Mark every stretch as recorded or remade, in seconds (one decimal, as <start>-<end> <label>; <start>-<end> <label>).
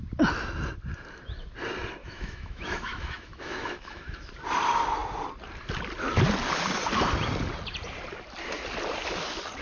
0.0-2.0 recorded; 2.0-4.3 remade; 4.3-9.6 recorded